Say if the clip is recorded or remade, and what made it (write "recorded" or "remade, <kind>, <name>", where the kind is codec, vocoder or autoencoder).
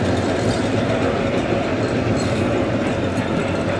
recorded